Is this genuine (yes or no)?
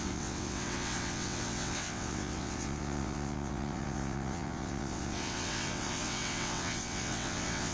no